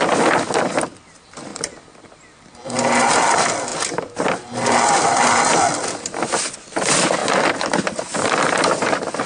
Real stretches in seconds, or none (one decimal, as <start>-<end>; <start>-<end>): 0.0-9.3